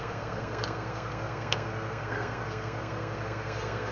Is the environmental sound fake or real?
fake